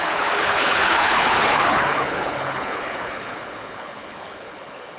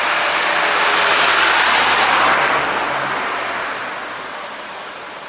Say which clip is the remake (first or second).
first